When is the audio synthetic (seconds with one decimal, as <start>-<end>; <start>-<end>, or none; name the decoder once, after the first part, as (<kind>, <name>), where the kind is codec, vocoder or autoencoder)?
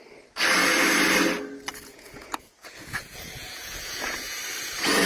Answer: 1.7-4.4 (vocoder, Vocos)